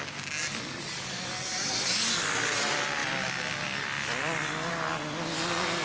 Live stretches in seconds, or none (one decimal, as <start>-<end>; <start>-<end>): 0.0-0.4; 1.2-5.8